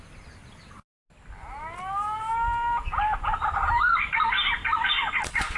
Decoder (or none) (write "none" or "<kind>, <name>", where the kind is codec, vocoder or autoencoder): none